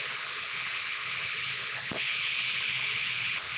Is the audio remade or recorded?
remade